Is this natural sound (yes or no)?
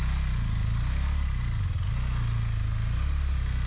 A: yes